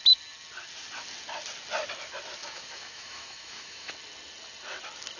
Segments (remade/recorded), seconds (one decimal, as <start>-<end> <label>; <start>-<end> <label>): 0.0-2.4 recorded; 2.4-3.9 remade; 3.9-5.2 recorded